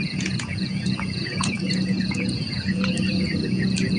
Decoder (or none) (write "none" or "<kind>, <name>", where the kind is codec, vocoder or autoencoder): vocoder, Vocos